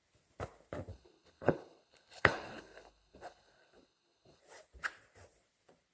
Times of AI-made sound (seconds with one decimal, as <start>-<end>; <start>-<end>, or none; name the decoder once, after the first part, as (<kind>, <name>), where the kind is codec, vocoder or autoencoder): 0.9-4.4 (codec, HILCodec)